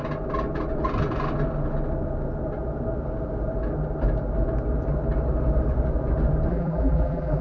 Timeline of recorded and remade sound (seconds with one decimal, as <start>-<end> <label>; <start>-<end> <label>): 0.0-6.5 recorded; 6.5-7.4 remade